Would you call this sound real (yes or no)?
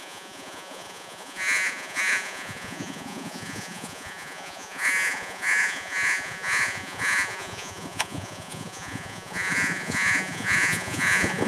no